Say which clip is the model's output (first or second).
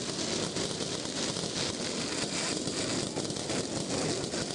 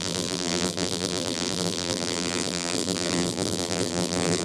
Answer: second